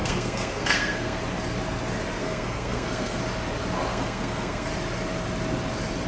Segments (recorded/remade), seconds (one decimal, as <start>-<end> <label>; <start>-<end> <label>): 0.0-1.2 remade; 1.2-2.2 recorded; 2.2-3.2 remade; 3.2-3.9 recorded; 3.9-4.7 remade; 4.7-6.1 recorded